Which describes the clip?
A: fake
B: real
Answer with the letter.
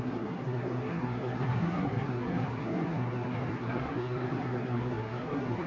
A